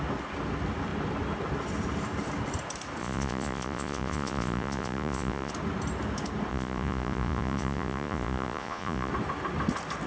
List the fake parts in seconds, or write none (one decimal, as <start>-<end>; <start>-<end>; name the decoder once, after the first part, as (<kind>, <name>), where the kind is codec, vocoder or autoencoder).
3.0-5.5 (vocoder, Vocos); 6.5-9.1